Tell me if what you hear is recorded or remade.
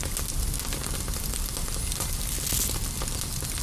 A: recorded